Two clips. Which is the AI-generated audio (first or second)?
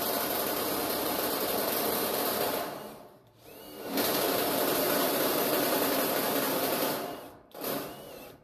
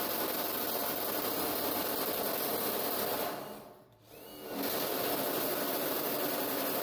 first